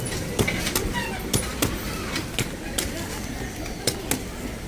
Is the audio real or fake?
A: real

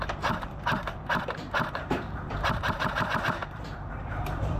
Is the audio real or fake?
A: fake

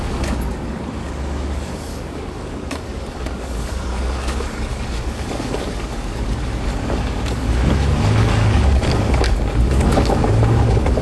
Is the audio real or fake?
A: fake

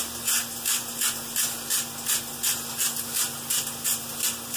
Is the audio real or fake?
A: real